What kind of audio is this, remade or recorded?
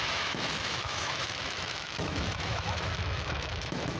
remade